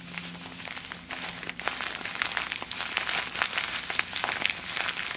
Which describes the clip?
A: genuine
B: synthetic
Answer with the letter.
A